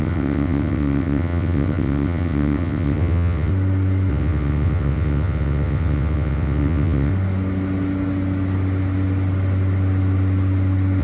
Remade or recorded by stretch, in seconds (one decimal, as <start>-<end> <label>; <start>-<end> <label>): 0.0-3.5 remade; 3.5-4.1 recorded; 4.1-7.1 remade; 7.1-11.0 recorded